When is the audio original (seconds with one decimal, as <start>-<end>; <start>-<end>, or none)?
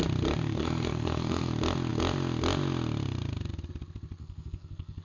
0.0-0.4; 1.5-4.2